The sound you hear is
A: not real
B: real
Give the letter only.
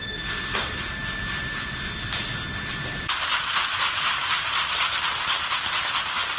B